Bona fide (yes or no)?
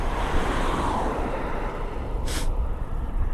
no